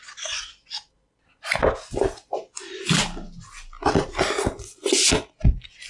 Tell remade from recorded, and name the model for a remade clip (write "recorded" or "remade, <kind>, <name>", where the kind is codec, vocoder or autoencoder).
recorded